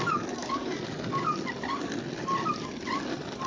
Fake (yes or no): no